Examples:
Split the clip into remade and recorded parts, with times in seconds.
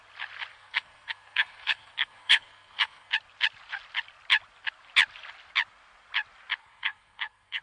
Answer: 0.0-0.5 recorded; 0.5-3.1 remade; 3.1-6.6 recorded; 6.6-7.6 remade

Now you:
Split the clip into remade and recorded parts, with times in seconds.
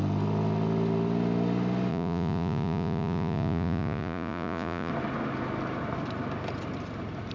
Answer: 0.0-1.9 recorded; 1.9-4.9 remade; 4.9-7.3 recorded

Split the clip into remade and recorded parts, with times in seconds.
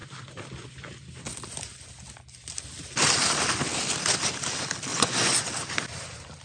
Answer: 0.0-4.9 recorded; 4.9-5.5 remade; 5.5-6.4 recorded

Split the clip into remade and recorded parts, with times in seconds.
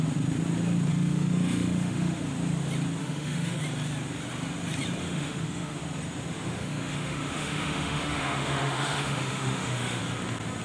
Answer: 0.0-0.9 recorded; 0.9-2.2 remade; 2.2-3.0 recorded; 3.0-3.6 remade; 3.6-5.0 recorded; 5.0-5.8 remade; 5.8-6.3 recorded; 6.3-10.0 remade; 10.0-10.6 recorded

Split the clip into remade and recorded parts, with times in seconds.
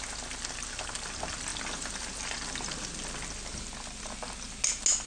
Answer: 0.0-5.1 recorded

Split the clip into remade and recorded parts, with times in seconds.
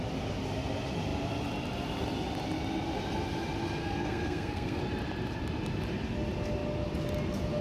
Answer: 0.0-3.8 recorded; 3.8-4.8 remade; 4.8-7.6 recorded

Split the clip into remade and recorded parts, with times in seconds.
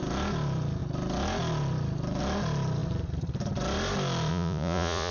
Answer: 0.0-4.3 recorded; 4.3-5.1 remade